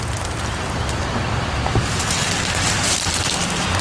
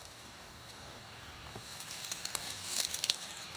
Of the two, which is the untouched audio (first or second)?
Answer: first